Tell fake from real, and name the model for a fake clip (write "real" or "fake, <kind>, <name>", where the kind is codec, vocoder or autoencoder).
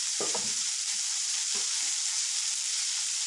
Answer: fake, vocoder, BigVGAN v2